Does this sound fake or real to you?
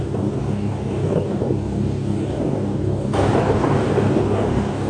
fake